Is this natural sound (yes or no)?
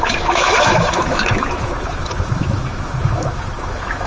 no